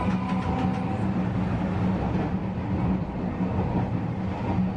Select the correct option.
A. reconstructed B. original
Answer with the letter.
B